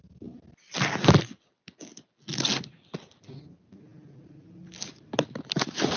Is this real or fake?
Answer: real